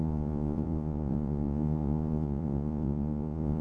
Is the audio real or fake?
fake